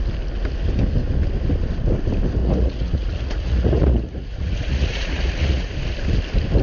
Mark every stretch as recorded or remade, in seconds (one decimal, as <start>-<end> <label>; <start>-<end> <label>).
0.0-2.4 recorded; 2.4-5.7 remade; 5.7-6.6 recorded